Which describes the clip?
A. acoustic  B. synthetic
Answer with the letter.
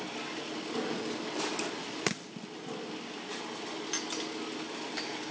A